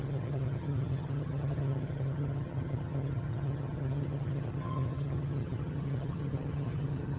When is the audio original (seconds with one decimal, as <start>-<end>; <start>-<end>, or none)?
none